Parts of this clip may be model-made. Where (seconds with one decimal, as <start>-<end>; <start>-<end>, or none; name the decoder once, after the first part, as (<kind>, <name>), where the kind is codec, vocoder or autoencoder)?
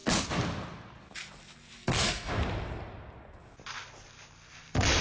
1.8-2.3 (codec, SNAC)